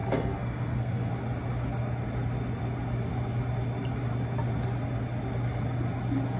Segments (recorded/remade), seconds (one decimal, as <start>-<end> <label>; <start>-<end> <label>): 0.0-1.1 remade; 1.1-6.4 recorded